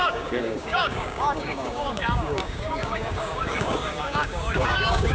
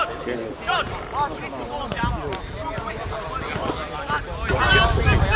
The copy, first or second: first